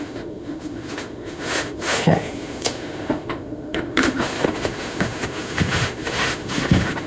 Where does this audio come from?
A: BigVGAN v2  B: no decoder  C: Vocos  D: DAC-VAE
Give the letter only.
D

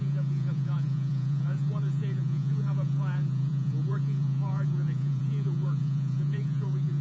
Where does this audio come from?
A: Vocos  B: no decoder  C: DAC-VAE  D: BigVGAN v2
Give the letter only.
A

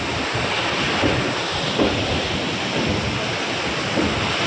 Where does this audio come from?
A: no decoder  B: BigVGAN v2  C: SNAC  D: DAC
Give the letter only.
A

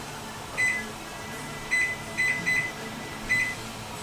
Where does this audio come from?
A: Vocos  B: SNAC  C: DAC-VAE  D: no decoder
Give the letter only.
D